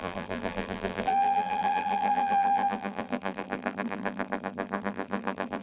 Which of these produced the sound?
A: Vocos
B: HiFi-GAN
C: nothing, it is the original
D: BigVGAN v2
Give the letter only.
D